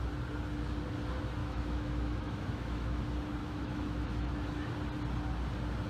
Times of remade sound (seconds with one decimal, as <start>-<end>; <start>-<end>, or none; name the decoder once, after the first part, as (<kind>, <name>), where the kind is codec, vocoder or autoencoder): 1.4-3.0 (autoencoder, DAC-VAE); 3.4-4.3